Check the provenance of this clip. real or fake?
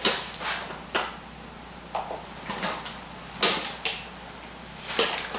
real